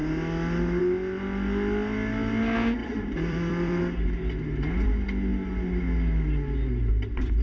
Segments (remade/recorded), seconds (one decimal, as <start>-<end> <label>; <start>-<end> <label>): 0.0-2.8 recorded; 2.8-3.8 remade; 3.8-7.4 recorded